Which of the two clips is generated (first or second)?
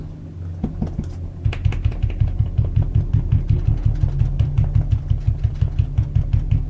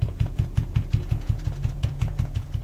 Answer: second